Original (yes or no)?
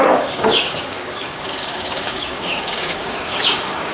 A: no